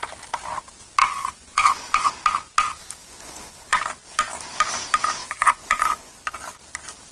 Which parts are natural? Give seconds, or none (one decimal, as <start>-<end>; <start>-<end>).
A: 0.0-1.0; 2.1-3.0; 3.8-5.2; 6.2-7.1